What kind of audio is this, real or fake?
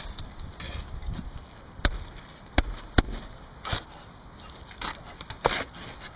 real